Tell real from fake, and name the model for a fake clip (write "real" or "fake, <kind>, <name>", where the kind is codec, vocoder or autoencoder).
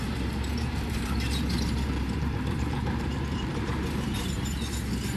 fake, vocoder, BigVGAN v2